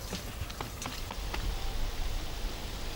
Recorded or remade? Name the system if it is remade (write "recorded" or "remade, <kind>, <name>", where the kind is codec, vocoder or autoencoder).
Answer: recorded